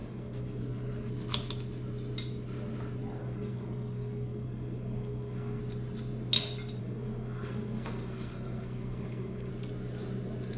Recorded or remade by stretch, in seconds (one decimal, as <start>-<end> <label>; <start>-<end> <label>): 0.0-1.1 remade; 1.1-3.2 recorded; 3.2-5.6 remade; 5.6-6.8 recorded; 6.8-9.5 remade; 9.5-10.6 recorded